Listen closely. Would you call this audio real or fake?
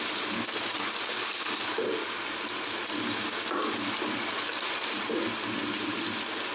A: real